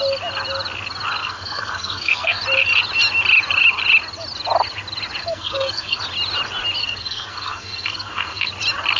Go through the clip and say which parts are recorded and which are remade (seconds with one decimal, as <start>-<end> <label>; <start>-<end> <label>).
0.0-1.2 recorded; 1.2-2.4 remade; 2.4-5.2 recorded; 5.2-6.0 remade; 6.0-6.8 recorded; 6.8-8.5 remade; 8.5-9.0 recorded